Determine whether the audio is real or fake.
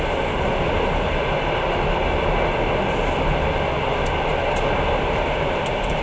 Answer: real